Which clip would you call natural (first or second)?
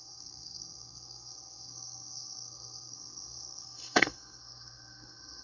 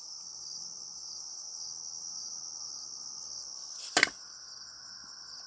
second